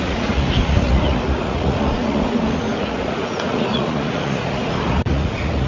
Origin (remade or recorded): remade